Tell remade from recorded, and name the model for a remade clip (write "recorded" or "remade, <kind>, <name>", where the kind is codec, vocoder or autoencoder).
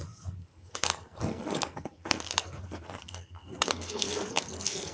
remade, codec, SNAC